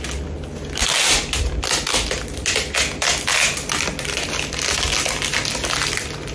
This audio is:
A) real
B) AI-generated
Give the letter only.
A